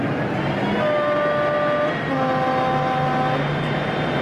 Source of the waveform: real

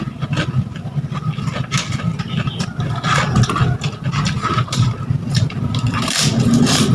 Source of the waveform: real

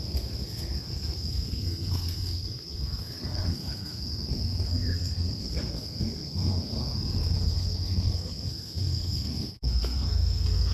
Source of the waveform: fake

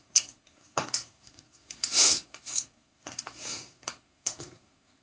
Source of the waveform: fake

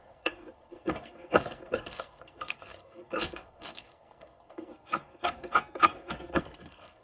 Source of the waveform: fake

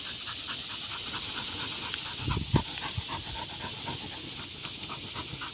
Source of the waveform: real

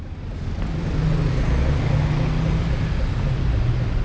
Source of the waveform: real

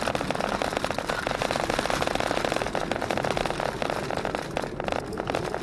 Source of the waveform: real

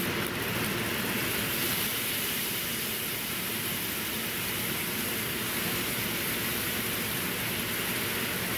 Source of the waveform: real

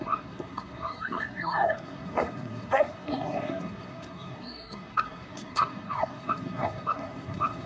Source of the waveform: fake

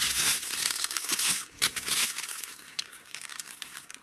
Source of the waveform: fake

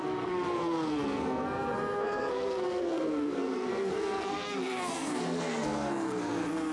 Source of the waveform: fake